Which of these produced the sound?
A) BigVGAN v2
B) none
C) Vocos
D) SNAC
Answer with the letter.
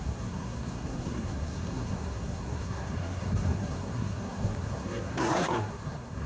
D